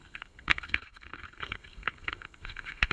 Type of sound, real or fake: fake